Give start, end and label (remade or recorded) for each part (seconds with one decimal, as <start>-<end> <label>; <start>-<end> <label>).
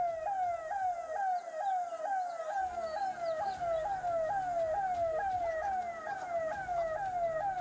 0.0-7.6 recorded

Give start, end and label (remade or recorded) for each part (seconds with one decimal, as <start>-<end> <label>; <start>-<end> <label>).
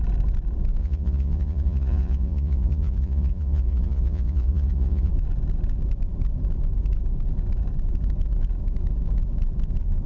0.0-0.8 recorded; 0.8-5.1 remade; 5.1-10.1 recorded